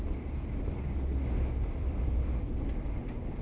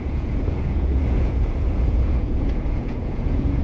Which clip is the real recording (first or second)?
first